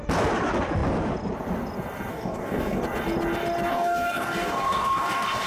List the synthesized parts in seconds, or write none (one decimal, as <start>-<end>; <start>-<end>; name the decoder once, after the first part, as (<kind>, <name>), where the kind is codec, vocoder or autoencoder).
2.1-2.8 (codec, DAC); 3.7-5.5